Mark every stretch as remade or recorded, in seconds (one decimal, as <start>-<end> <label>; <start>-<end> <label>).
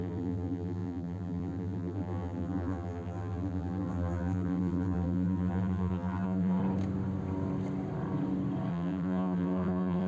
0.0-6.6 remade; 6.6-8.7 recorded; 8.7-10.1 remade